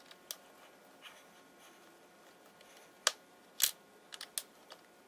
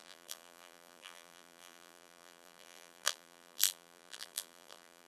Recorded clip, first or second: first